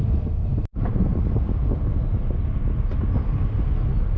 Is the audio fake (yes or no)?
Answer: no